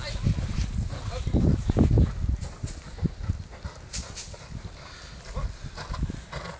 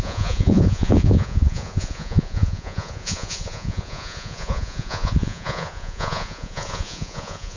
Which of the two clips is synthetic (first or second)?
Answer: second